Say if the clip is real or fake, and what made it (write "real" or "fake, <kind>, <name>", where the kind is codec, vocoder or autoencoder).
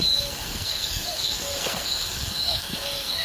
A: fake, codec, SNAC